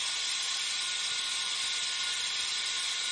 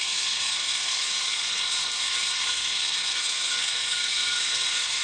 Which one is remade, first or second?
second